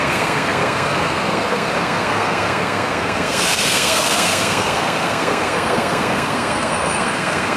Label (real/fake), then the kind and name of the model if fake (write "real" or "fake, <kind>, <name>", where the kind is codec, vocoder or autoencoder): fake, codec, SNAC